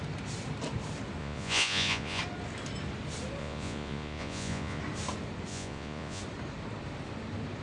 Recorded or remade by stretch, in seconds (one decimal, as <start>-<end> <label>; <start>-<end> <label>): 0.0-1.2 recorded; 1.2-2.2 remade; 2.2-3.4 recorded; 3.4-4.8 remade; 4.8-5.5 recorded; 5.5-6.2 remade; 6.2-7.6 recorded